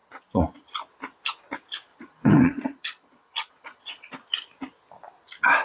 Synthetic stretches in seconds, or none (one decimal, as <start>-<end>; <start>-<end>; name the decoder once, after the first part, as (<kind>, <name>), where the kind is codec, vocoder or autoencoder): 0.0-0.7 (vocoder, Vocos); 1.9-4.1